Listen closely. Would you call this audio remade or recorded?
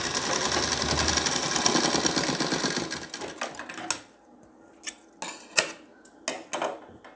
recorded